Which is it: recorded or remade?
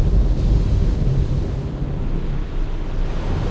recorded